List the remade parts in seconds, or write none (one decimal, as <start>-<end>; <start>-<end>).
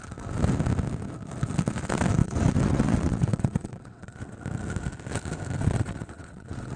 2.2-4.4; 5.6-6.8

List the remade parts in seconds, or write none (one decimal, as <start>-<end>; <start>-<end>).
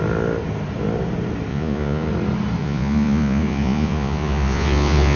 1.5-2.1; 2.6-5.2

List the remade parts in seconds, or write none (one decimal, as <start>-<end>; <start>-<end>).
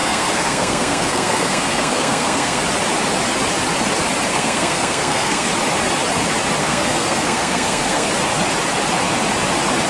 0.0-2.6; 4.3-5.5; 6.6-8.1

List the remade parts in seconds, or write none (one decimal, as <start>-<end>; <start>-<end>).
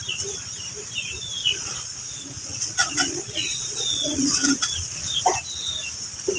1.4-5.2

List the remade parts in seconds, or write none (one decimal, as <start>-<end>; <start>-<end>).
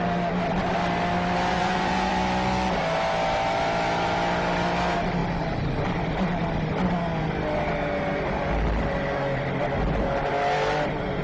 1.5-2.1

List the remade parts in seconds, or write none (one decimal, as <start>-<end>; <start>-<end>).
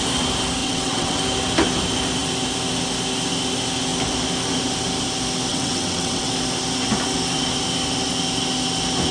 0.6-1.2; 5.5-6.3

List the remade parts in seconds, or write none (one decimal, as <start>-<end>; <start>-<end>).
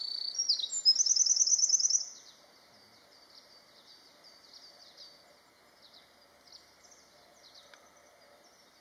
none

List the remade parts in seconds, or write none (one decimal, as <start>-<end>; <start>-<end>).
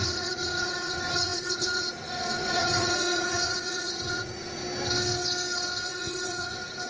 0.0-4.6; 5.8-6.9